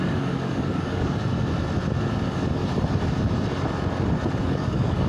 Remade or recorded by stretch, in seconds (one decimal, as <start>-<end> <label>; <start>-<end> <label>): 0.0-1.3 remade; 1.3-2.1 recorded; 2.1-2.6 remade; 2.6-4.4 recorded; 4.4-5.1 remade